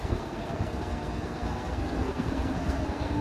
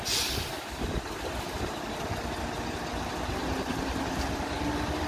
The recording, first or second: second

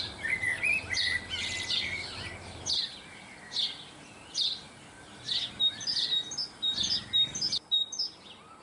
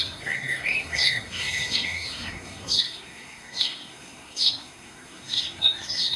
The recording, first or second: first